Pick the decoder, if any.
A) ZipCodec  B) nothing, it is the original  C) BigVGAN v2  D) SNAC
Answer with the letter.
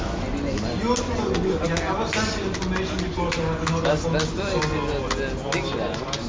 B